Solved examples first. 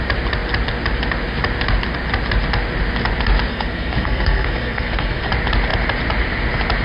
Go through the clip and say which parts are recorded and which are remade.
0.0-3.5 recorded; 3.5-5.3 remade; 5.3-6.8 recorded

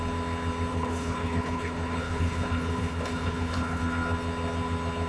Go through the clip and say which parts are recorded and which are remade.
0.0-0.7 recorded; 0.7-3.8 remade; 3.8-5.1 recorded

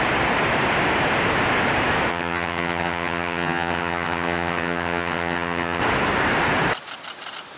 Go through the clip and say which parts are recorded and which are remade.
0.0-2.1 recorded; 2.1-5.8 remade; 5.8-7.6 recorded

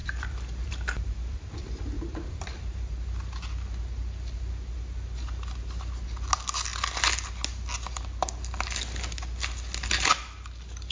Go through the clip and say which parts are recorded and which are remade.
0.0-2.8 remade; 2.8-10.9 recorded

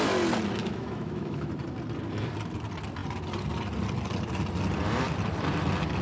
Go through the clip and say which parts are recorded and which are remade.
0.0-0.6 recorded; 0.6-1.5 remade; 1.5-6.0 recorded

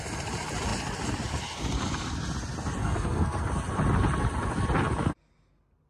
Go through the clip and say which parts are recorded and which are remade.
0.0-2.8 recorded; 2.8-3.4 remade; 3.4-5.9 recorded